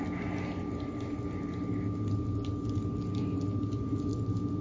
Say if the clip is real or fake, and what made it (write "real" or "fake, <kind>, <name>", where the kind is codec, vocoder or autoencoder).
real